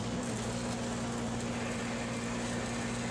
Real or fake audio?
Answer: real